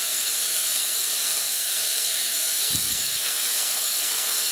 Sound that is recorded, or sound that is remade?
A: remade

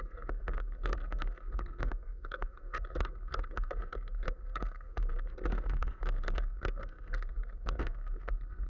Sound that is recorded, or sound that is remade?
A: remade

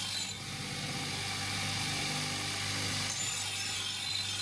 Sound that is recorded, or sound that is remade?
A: recorded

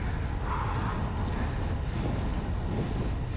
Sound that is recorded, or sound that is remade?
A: recorded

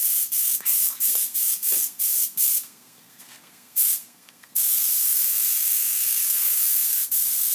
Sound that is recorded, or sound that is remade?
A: remade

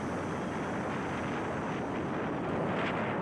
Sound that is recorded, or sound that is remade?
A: recorded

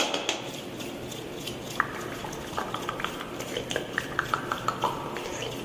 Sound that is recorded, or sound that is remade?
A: recorded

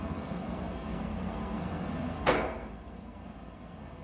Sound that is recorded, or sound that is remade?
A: remade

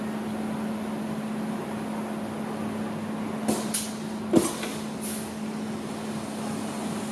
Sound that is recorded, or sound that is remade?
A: recorded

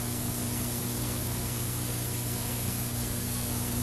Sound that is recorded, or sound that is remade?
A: remade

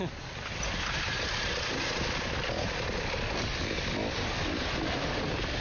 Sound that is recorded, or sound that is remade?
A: recorded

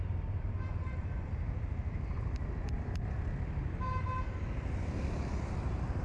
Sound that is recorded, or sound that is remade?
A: recorded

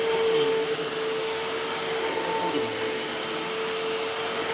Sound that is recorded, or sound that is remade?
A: recorded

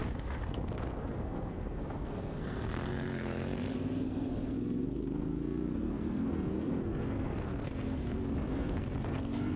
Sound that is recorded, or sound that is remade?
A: remade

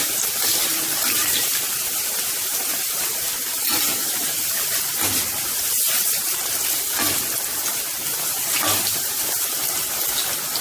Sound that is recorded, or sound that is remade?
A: recorded